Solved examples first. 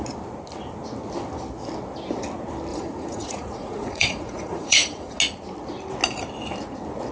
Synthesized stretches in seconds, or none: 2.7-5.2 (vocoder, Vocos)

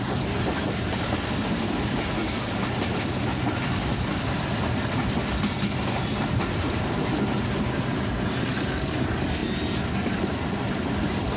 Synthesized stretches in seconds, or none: none